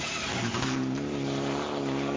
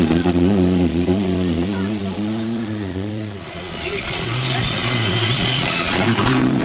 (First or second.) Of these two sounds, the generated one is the second